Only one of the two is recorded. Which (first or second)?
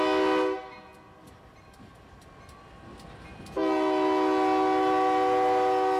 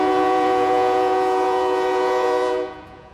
first